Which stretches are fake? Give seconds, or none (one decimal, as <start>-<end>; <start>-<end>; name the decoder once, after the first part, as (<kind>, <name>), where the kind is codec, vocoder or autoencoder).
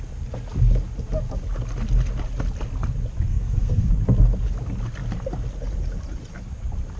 3.3-3.9 (codec, SNAC)